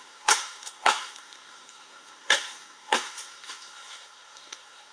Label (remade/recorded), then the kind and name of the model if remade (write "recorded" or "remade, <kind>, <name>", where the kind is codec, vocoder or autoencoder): remade, codec, SNAC